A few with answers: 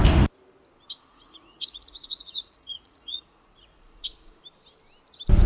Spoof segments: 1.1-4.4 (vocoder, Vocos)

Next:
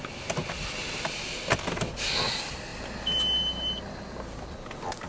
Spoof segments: none